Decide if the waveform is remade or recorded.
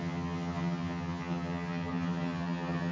remade